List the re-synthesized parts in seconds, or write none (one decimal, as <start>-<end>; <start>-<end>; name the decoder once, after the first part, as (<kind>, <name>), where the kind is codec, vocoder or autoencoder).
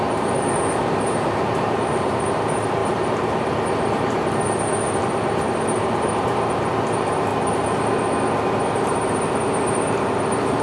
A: 0.0-7.3 (vocoder, BigVGAN v2); 8.7-10.6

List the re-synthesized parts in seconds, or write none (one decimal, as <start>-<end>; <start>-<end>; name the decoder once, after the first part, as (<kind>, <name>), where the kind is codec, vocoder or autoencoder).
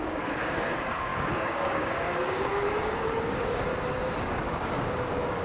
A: 0.0-3.7 (codec, DAC); 4.2-5.4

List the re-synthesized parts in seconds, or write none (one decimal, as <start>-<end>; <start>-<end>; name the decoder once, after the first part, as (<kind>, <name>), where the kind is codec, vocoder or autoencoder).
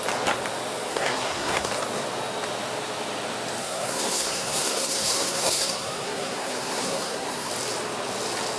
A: 0.9-1.7 (codec, SNAC); 3.6-7.5